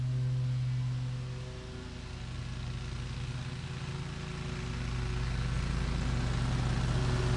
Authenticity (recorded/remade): recorded